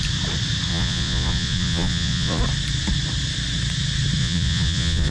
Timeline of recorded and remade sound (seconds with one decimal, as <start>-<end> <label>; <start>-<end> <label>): 0.0-0.7 recorded; 0.7-2.4 remade; 2.4-4.2 recorded; 4.2-5.1 remade